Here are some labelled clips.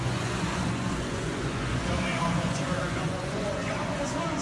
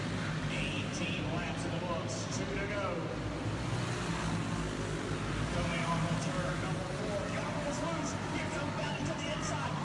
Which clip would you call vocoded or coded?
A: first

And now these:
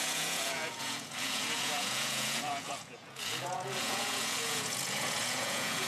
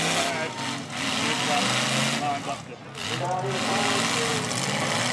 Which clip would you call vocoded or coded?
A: first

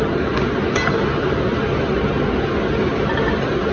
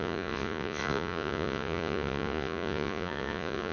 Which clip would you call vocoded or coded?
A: second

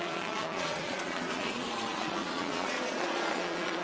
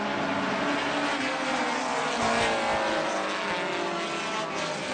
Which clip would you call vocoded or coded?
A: first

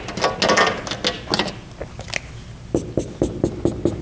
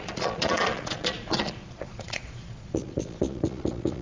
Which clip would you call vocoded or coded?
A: second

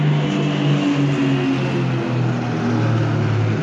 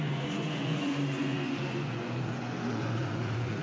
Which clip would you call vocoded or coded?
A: second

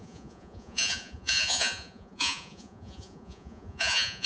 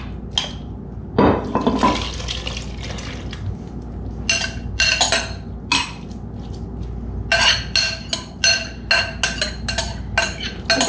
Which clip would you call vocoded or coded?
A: first